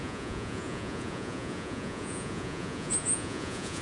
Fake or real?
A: fake